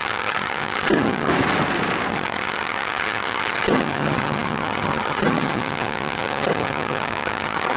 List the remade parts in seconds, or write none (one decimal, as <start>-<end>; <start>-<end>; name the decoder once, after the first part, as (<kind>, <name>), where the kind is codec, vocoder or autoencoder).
0.0-1.3 (vocoder, HiFi-GAN); 2.1-7.8